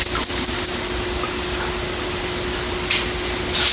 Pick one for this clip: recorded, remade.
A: recorded